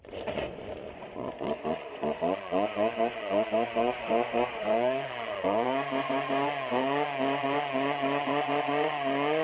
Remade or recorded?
remade